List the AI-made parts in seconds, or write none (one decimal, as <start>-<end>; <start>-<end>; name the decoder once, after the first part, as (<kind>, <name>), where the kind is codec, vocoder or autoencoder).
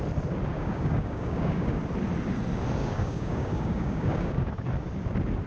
0.5-1.8 (codec, DAC); 2.8-4.5